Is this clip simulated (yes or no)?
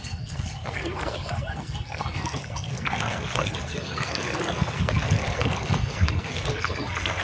yes